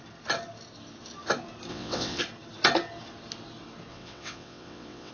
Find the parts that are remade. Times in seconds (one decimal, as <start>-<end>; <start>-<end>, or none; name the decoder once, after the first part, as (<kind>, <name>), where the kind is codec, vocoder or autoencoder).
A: 1.7-2.2 (vocoder, WaveNeXt); 3.9-5.1

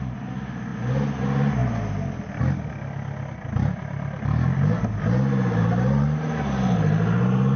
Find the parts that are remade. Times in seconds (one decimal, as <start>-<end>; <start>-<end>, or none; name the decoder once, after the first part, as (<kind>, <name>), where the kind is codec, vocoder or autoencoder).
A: none